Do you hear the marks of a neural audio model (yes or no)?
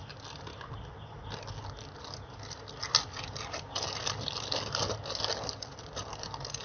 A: no